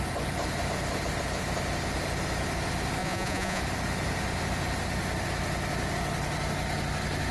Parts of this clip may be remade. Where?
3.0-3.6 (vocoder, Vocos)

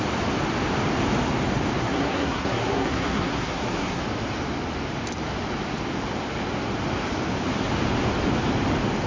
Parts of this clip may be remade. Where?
1.8-4.0 (codec, SNAC)

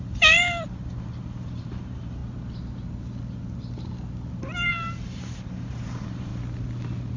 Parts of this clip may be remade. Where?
0.0-2.2 (vocoder, BigVGAN v2); 4.7-6.3

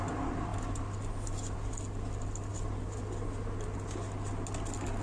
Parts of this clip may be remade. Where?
none

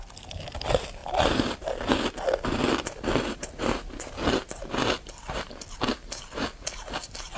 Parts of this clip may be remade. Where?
1.0-1.9 (vocoder, BigVGAN v2)

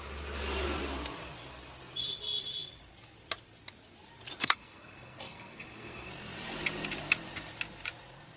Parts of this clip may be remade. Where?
4.4-6.1 (codec, SNAC)